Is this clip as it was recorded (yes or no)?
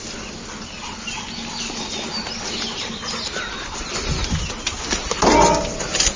yes